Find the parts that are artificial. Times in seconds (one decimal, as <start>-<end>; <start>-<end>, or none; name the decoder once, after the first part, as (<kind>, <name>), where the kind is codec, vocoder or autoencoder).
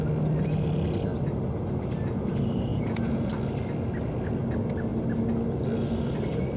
2.7-3.3 (vocoder, Vocos)